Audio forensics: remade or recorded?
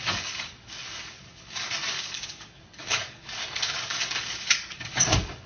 remade